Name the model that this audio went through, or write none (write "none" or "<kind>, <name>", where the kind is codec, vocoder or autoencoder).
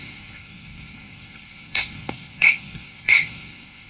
codec, SNAC